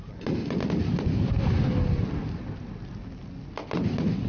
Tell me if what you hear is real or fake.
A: real